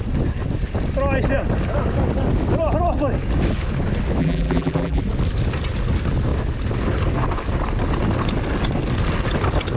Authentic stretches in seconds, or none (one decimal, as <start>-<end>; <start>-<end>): 0.0-4.2; 5.0-9.8

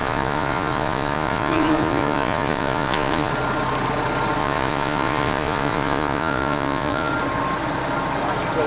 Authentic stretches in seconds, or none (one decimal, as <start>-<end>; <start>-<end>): 3.3-4.4; 7.1-8.7

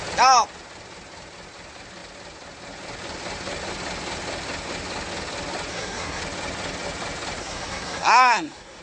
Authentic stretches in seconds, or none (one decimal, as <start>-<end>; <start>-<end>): 0.0-5.7; 6.2-7.4

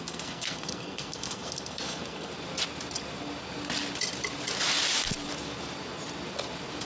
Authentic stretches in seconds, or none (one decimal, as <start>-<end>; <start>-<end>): 2.3-6.8

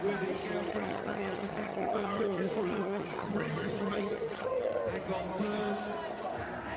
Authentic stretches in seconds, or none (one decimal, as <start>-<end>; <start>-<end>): 0.0-0.7; 4.8-6.8

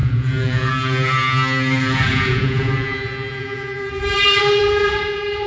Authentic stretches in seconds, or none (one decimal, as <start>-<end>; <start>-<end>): 0.7-2.1